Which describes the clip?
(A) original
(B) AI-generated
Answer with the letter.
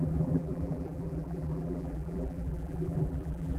B